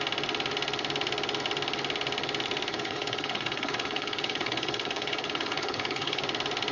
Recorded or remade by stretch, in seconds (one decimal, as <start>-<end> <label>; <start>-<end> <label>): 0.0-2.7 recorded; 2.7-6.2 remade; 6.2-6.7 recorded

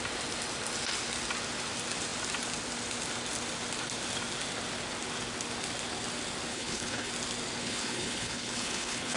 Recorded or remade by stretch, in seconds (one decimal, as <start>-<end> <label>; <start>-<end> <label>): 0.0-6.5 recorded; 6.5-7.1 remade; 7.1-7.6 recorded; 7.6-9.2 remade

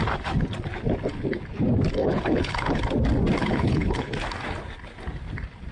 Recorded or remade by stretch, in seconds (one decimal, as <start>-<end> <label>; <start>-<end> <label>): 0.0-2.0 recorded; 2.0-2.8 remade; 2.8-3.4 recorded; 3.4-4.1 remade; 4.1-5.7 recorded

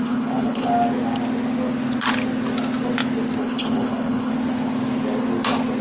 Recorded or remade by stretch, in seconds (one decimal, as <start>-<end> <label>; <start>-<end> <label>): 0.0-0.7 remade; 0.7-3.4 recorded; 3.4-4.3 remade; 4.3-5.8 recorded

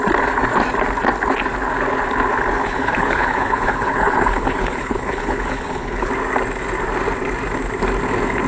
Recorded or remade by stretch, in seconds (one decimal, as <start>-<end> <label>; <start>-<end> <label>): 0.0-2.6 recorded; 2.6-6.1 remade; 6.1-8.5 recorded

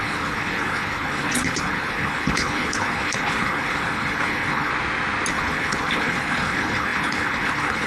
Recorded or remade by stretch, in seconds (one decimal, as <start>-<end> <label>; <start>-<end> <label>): 0.0-4.7 remade; 4.7-5.3 recorded; 5.3-7.9 remade

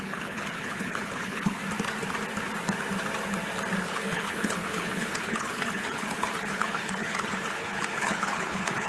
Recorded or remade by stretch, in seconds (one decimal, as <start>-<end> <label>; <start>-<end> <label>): 0.0-1.6 remade; 1.6-3.8 recorded; 3.8-8.9 remade